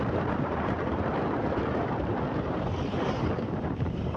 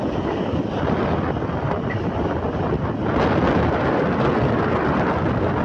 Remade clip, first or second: first